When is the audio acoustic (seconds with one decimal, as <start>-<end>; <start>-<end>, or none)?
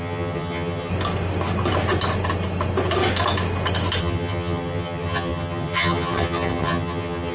0.9-4.0